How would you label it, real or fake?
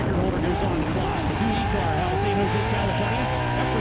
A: real